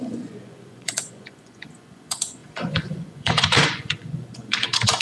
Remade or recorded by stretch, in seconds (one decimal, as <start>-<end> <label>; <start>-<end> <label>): 0.0-5.0 remade